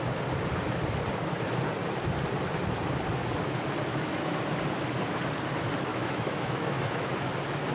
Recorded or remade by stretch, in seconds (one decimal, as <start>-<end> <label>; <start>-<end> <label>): 0.0-3.9 recorded; 3.9-4.4 remade; 4.4-5.9 recorded; 5.9-7.3 remade; 7.3-7.7 recorded